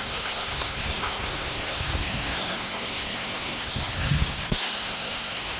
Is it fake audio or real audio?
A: fake